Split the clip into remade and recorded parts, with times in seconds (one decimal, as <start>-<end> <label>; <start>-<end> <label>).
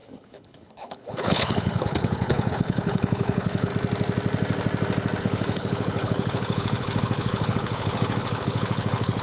0.0-3.7 remade; 3.7-5.2 recorded; 5.2-9.2 remade